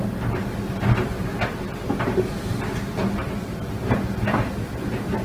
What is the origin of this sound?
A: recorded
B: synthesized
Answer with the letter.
A